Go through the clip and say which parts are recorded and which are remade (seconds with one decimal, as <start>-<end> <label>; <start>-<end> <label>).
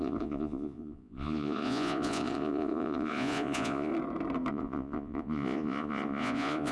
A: 0.0-3.9 remade; 3.9-4.5 recorded; 4.5-6.7 remade